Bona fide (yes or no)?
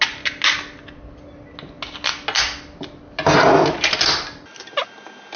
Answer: yes